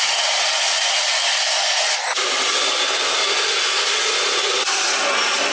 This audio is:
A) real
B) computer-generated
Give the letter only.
A